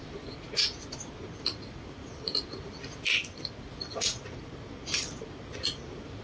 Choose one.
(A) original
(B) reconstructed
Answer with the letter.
A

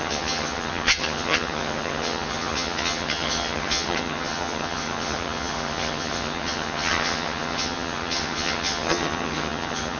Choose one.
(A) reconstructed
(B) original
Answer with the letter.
A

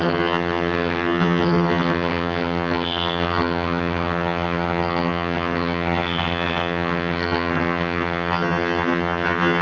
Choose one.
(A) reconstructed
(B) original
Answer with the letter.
A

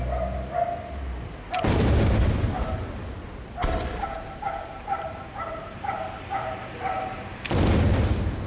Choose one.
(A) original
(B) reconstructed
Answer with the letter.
A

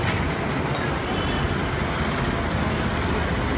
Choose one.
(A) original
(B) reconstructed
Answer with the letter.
A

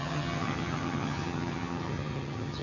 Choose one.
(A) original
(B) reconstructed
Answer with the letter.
B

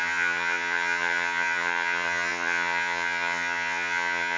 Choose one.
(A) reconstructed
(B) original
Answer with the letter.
A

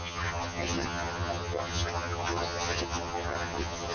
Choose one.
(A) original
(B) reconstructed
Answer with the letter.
B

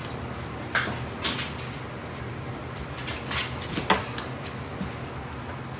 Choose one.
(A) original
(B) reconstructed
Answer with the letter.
A